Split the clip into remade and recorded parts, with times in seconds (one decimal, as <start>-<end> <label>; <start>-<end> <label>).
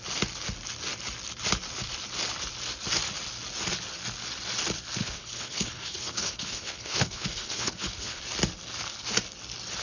0.0-5.0 recorded; 5.0-8.2 remade; 8.2-9.8 recorded